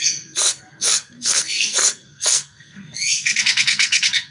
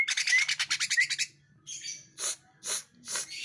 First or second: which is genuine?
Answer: second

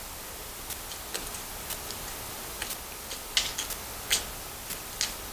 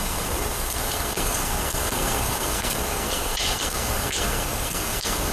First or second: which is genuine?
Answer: first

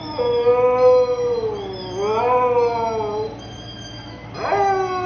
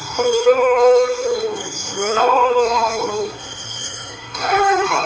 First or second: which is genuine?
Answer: first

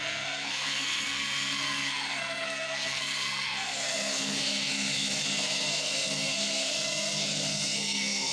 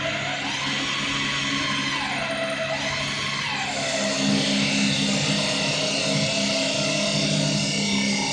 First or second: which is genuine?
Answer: second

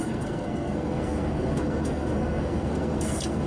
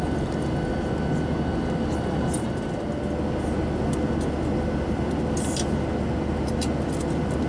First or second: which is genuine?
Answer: second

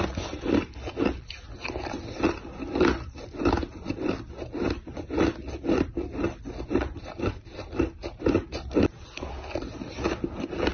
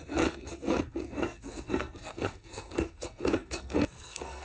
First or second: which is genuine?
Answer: first